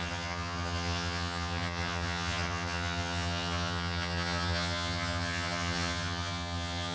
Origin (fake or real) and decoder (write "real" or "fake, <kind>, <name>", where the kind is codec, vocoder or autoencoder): fake, vocoder, HiFi-GAN